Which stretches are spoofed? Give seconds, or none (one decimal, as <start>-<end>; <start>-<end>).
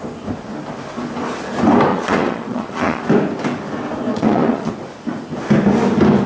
1.9-3.0; 4.1-4.7